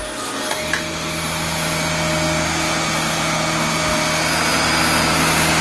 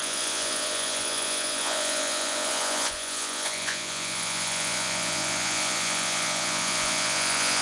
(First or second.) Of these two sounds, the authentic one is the first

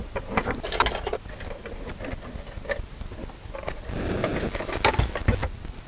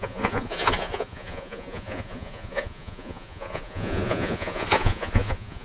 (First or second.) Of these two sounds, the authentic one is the first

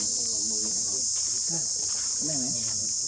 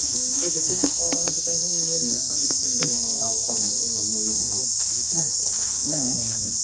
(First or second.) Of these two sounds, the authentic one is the first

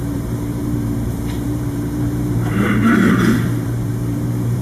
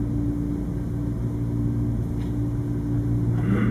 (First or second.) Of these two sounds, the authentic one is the second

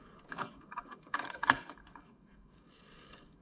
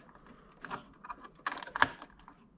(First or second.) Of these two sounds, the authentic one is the second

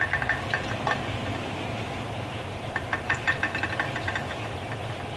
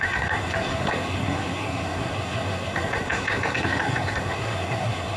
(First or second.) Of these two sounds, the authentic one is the first